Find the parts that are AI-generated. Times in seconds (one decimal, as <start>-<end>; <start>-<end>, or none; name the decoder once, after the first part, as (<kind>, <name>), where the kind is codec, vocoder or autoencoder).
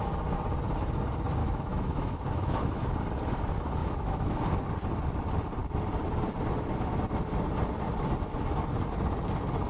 1.4-2.8 (autoencoder, DAC-VAE); 3.8-4.3